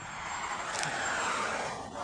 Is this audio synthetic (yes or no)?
no